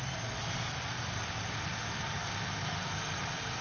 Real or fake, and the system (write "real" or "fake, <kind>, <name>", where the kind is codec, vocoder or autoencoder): real